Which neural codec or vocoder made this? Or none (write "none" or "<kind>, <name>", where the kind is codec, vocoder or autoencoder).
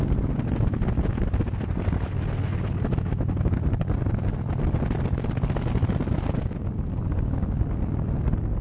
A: none